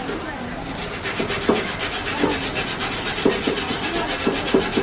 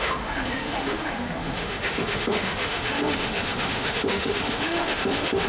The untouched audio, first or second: first